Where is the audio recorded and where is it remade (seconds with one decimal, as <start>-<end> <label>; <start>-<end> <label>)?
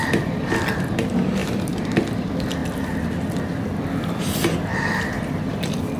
0.0-1.4 recorded; 1.4-2.0 remade; 2.0-4.7 recorded; 4.7-5.4 remade; 5.4-6.0 recorded